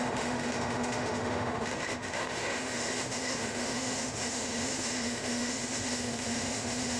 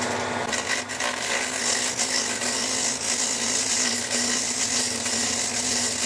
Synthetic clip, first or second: first